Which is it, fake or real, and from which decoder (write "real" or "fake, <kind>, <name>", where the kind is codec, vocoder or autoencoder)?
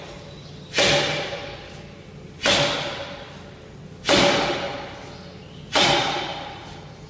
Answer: real